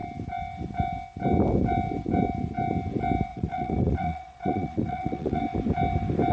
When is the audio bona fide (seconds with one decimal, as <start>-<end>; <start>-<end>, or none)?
0.0-3.3; 5.4-6.3